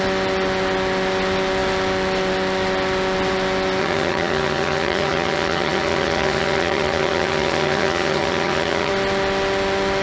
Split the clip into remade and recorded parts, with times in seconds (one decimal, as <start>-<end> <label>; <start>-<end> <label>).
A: 0.0-3.8 recorded; 3.8-8.9 remade; 8.9-10.0 recorded